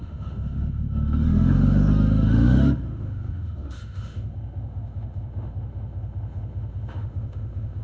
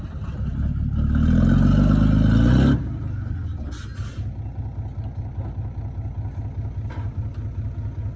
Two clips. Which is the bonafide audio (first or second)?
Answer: second